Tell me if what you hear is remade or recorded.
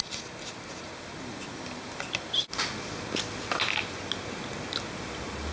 recorded